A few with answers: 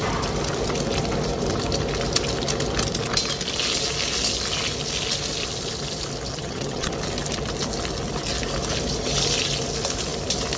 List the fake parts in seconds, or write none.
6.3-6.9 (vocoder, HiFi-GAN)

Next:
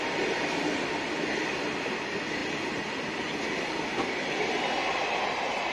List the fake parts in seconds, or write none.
none

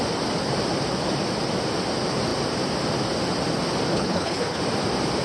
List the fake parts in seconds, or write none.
3.9-4.6 (codec, HILCodec)

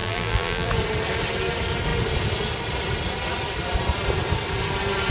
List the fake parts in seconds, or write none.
0.0-0.7 (vocoder, BigVGAN v2)

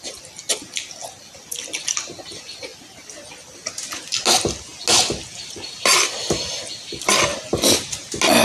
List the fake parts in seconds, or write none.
none

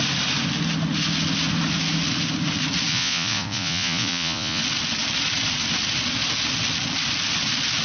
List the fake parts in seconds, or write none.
2.9-4.6 (vocoder, Vocos)